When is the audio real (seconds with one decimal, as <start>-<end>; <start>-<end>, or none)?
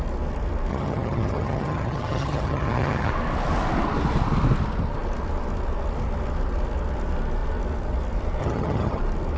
0.0-0.7; 3.1-8.4; 9.0-9.4